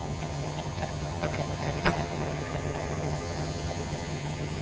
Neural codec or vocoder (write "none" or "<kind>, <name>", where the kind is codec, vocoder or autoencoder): vocoder, HiFi-GAN